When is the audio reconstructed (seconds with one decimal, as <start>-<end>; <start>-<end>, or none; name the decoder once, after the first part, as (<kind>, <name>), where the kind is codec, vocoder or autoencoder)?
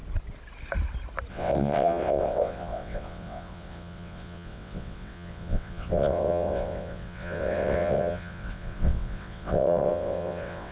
1.3-10.7 (vocoder, WaveNeXt)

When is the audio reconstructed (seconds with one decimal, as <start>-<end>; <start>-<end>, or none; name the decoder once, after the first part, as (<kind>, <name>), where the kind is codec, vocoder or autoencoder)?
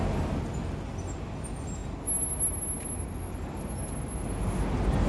none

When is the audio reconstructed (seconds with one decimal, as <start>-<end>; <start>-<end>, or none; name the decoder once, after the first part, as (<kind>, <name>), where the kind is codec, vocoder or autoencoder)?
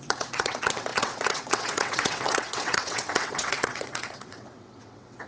0.0-5.3 (vocoder, WaveNeXt)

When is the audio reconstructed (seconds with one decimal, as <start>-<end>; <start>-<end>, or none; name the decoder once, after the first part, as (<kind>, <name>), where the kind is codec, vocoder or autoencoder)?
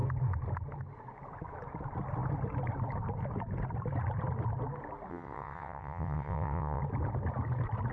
5.1-6.8 (vocoder, WaveNeXt)